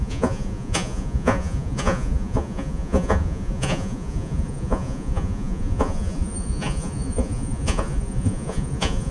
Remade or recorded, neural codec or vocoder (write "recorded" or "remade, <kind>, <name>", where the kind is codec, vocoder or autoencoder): remade, vocoder, Vocos